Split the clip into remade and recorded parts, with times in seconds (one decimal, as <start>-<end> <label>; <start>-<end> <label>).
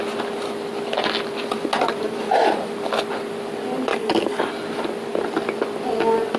0.0-3.9 recorded; 3.9-4.5 remade; 4.5-6.4 recorded